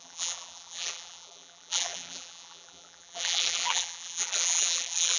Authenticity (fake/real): fake